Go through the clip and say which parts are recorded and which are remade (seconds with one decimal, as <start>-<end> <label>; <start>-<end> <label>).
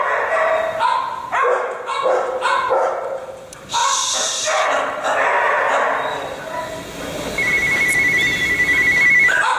0.0-9.6 recorded